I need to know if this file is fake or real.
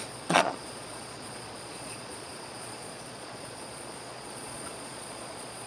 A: fake